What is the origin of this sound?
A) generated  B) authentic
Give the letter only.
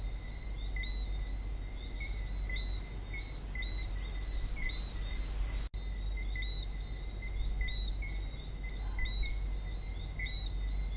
B